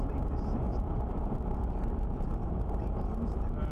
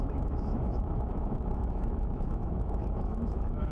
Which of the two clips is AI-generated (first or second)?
second